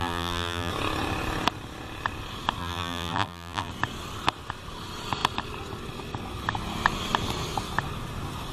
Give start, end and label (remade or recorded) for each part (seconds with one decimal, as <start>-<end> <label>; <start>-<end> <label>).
0.0-0.7 remade; 0.7-2.6 recorded; 2.6-3.7 remade; 3.7-8.5 recorded